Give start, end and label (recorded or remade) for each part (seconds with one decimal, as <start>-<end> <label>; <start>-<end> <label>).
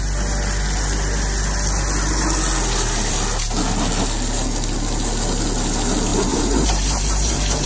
0.0-6.1 recorded; 6.1-7.7 remade